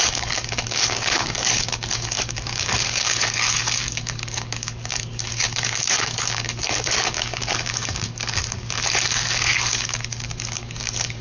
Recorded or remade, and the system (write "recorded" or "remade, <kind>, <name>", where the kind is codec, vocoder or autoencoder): remade, codec, DAC